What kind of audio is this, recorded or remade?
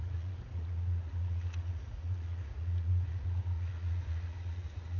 remade